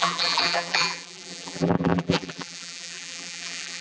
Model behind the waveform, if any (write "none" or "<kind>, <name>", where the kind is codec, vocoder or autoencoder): vocoder, BigVGAN v2